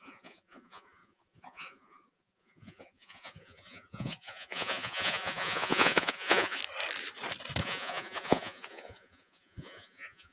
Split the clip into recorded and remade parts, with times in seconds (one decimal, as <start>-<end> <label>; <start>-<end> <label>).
0.0-6.6 remade; 6.6-7.6 recorded; 7.6-10.3 remade